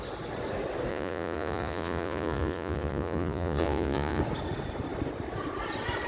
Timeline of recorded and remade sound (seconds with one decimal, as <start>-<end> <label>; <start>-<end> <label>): 0.0-0.9 recorded; 0.9-4.2 remade; 4.2-6.1 recorded